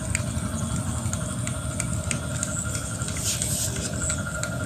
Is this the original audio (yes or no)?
yes